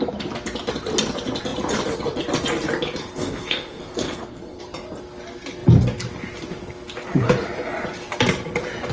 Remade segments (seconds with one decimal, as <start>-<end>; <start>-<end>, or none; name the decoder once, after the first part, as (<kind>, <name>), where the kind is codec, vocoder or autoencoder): 3.0-4.6 (codec, SNAC)